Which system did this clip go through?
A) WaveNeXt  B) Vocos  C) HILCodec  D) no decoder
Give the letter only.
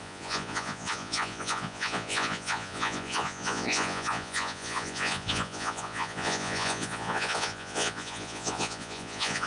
B